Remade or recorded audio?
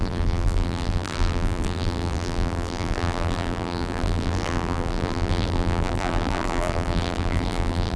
remade